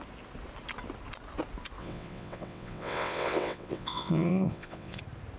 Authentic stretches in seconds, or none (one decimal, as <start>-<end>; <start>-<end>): 0.0-1.8; 5.0-5.4